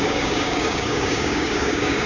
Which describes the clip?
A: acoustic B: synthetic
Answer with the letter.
B